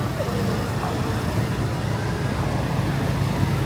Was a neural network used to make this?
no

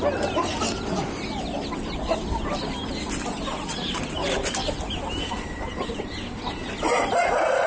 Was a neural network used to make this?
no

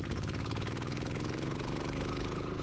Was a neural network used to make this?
yes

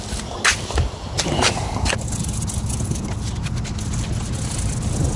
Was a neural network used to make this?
no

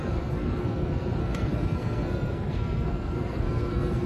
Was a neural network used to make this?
yes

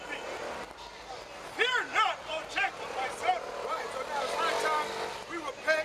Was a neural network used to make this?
no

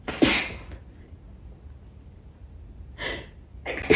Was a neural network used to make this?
no